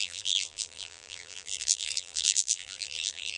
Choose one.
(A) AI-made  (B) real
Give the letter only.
A